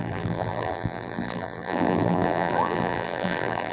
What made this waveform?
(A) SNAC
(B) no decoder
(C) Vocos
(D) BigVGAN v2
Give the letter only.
D